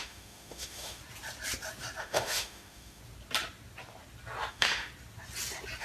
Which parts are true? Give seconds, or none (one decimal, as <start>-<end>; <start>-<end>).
1.0-2.0; 3.0-4.5; 4.9-5.8